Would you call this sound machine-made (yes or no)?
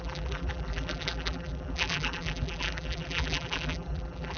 yes